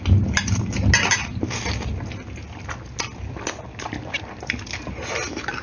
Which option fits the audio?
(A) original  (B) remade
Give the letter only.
A